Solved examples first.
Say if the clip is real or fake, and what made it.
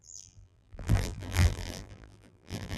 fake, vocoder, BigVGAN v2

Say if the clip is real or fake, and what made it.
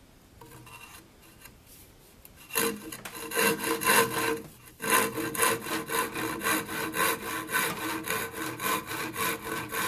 real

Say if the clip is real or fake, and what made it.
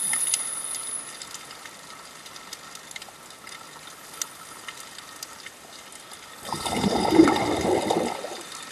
real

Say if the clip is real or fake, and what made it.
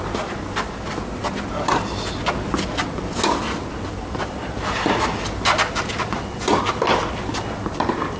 real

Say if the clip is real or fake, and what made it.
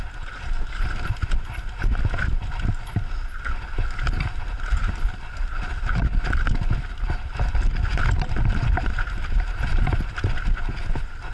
real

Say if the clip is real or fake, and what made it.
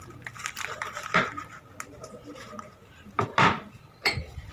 fake, vocoder, BigVGAN v2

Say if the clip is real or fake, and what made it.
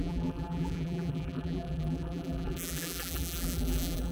fake, vocoder, BigVGAN v2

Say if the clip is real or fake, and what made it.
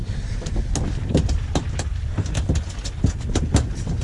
real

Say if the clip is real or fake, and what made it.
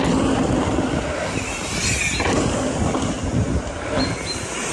real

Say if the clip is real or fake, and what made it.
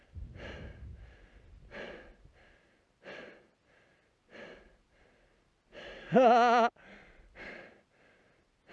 fake, vocoder, BigVGAN v2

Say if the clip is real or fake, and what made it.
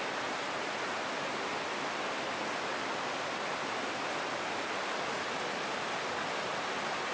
real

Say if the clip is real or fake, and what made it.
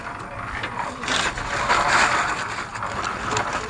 real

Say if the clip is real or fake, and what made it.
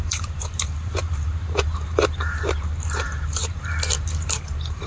fake, vocoder, BigVGAN v2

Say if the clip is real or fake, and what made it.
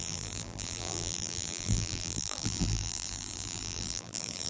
fake, vocoder, BigVGAN v2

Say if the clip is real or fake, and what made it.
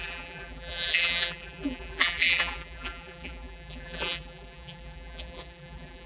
fake, vocoder, BigVGAN v2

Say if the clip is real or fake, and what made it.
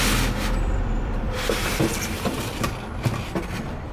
fake, vocoder, BigVGAN v2